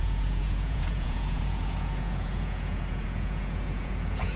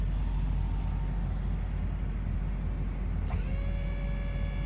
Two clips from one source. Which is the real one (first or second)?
second